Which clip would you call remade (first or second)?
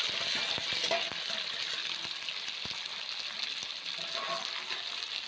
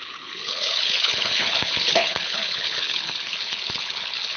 second